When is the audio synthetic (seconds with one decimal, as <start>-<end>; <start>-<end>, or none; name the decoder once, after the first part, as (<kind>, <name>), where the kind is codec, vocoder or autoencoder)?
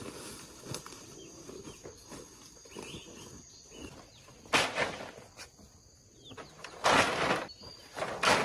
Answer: none